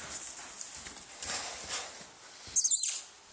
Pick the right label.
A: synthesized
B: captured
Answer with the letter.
B